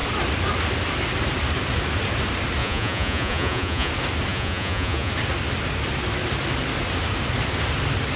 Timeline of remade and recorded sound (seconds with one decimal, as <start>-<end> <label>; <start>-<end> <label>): 0.0-2.6 recorded; 2.6-3.9 remade; 3.9-4.3 recorded; 4.3-5.1 remade; 5.1-8.2 recorded